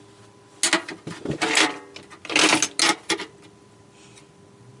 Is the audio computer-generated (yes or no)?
no